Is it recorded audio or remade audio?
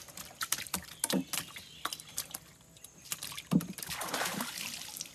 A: recorded